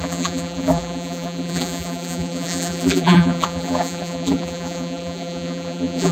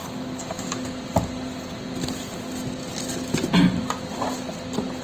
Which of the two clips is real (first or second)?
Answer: second